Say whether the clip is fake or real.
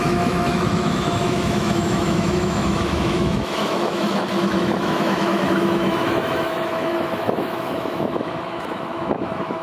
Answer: fake